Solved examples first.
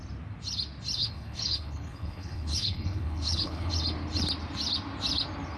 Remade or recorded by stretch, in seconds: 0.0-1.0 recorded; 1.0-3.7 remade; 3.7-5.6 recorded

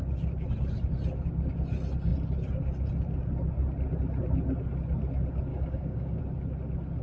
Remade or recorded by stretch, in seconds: 0.0-5.5 recorded; 5.5-6.2 remade; 6.2-7.0 recorded

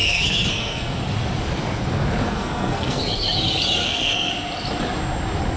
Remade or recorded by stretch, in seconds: 0.0-1.0 remade; 1.0-2.2 recorded; 2.2-3.0 remade; 3.0-3.8 recorded; 3.8-4.3 remade; 4.3-5.6 recorded